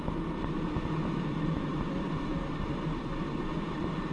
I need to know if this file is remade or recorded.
remade